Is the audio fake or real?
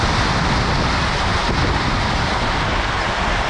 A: real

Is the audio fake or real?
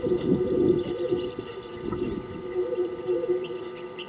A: fake